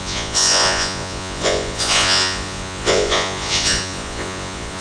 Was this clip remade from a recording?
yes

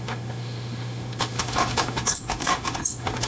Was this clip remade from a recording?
yes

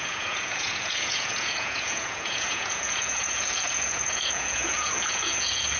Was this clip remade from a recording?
yes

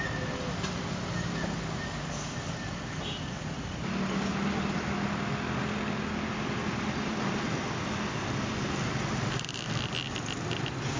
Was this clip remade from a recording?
no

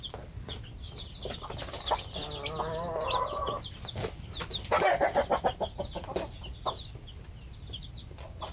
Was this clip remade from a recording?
no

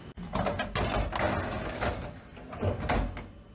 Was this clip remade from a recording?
no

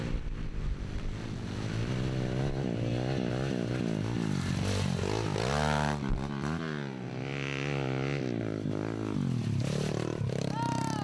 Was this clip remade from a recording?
no